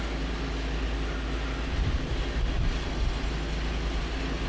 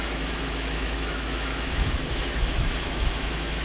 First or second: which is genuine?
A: first